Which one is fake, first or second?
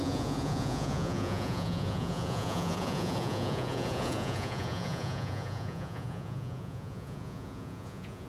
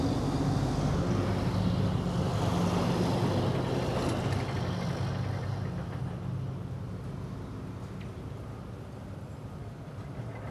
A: first